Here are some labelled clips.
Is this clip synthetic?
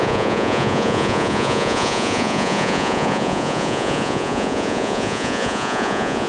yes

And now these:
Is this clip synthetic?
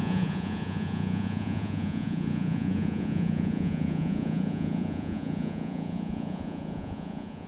yes